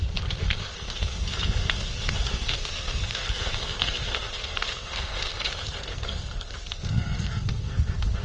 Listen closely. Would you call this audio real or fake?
fake